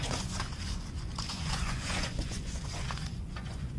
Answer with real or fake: fake